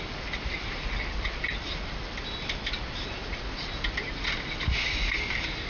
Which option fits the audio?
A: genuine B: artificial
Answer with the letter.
A